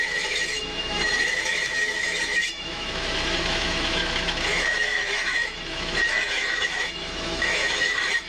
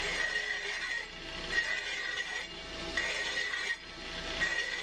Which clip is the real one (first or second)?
second